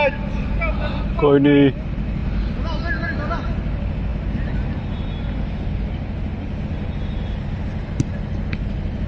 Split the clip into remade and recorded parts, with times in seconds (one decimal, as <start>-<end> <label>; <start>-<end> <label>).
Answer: 0.0-9.1 recorded